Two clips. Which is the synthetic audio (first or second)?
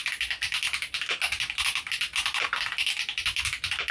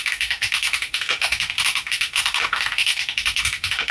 second